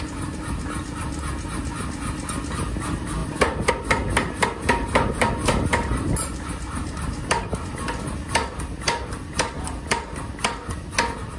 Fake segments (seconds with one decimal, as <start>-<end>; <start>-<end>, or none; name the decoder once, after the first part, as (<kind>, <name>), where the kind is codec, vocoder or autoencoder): 3.2-3.7 (vocoder, BigVGAN v2)

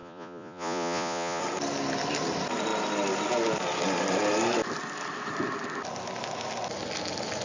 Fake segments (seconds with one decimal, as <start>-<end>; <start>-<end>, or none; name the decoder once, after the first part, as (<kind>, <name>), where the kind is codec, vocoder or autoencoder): 0.0-1.4 (vocoder, Vocos)

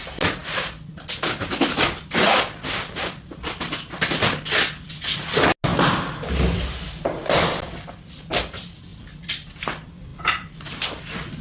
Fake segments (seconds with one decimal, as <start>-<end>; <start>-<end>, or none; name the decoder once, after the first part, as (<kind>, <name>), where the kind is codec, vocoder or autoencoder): none

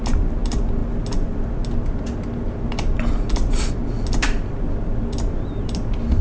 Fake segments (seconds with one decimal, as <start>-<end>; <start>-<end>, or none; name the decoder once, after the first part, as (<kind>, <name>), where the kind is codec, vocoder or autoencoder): none